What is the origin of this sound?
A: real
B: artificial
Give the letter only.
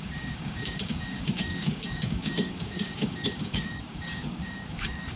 B